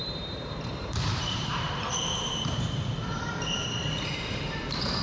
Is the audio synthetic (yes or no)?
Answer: yes